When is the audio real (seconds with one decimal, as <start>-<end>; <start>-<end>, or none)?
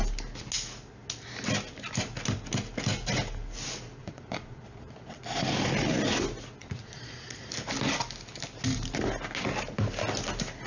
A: 0.0-4.0; 5.2-6.6; 7.5-10.7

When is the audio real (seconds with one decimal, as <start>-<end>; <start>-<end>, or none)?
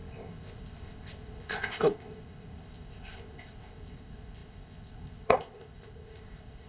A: none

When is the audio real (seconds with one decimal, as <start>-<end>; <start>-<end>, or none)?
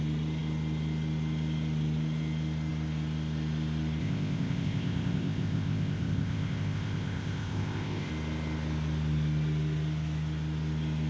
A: 0.0-4.0; 8.1-11.1